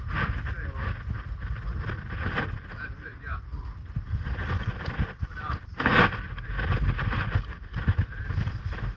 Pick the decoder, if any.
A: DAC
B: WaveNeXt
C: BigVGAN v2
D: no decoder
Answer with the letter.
D